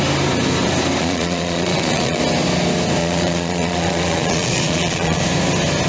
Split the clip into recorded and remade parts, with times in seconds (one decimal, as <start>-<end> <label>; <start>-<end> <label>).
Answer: 0.0-1.0 recorded; 1.0-2.2 remade; 2.2-3.0 recorded; 3.0-5.2 remade; 5.2-5.9 recorded